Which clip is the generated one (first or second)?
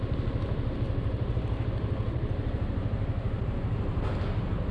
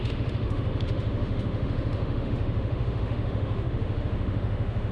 second